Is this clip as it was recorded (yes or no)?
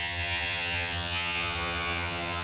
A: no